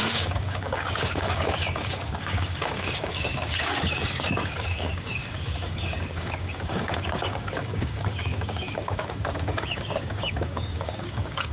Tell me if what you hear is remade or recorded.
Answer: remade